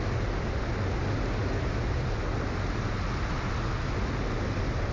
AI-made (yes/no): no